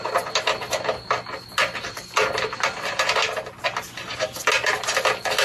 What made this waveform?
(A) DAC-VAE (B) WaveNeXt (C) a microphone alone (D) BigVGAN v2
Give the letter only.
C